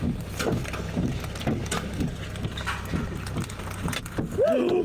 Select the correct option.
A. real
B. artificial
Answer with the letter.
A